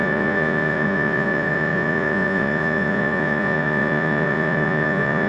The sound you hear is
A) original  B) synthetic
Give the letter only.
B